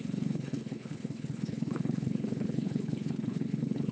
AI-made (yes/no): yes